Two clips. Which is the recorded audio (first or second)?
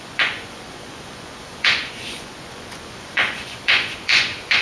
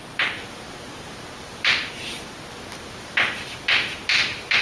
second